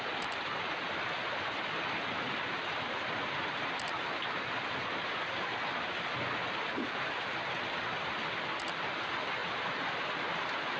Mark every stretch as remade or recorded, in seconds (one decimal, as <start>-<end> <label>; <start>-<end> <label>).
0.0-10.8 recorded